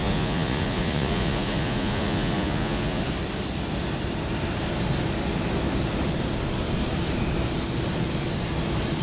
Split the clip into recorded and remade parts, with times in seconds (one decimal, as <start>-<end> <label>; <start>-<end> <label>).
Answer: 0.0-3.0 remade; 3.0-9.0 recorded